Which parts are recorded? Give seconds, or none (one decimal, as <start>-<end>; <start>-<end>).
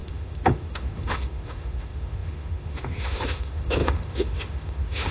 none